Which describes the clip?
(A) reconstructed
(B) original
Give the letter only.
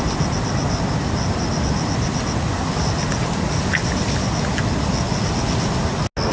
B